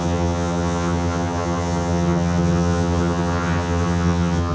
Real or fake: fake